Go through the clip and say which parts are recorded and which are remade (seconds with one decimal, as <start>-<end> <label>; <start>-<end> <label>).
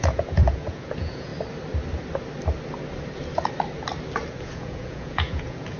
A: 0.0-1.3 remade; 1.3-4.3 recorded; 4.3-5.8 remade